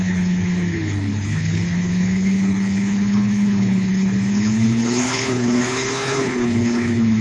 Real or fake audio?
fake